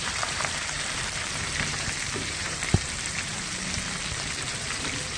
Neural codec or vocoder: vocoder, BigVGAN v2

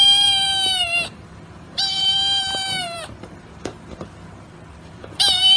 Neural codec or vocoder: vocoder, BigVGAN v2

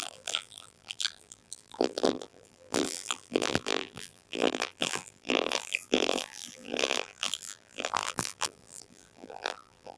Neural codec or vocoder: vocoder, BigVGAN v2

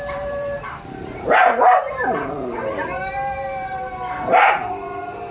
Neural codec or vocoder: vocoder, BigVGAN v2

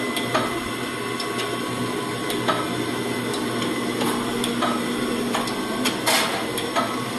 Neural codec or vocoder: none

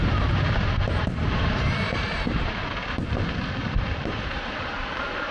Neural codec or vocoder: vocoder, BigVGAN v2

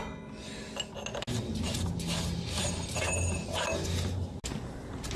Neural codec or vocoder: none